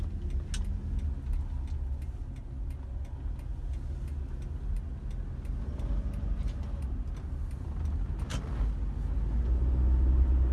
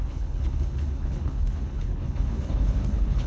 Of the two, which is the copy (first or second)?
second